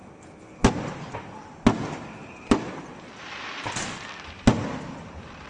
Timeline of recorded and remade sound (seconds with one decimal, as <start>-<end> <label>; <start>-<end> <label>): 0.0-2.2 recorded; 2.2-2.9 remade; 2.9-5.5 recorded